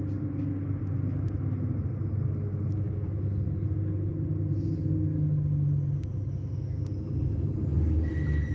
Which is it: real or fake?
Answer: real